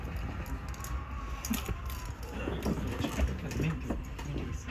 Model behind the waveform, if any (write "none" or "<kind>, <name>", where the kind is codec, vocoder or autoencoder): none